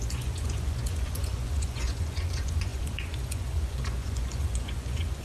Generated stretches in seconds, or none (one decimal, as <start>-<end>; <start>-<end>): 0.0-5.2